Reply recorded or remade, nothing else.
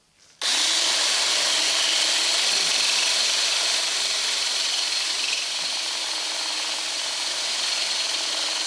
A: recorded